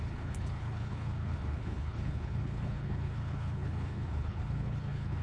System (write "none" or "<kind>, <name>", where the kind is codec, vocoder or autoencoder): codec, HILCodec